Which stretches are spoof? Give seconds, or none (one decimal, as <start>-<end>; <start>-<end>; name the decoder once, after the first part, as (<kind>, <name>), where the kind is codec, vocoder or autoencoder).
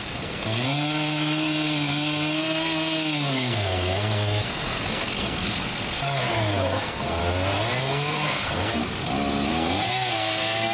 0.0-7.2 (codec, SNAC); 7.8-8.8; 9.5-10.7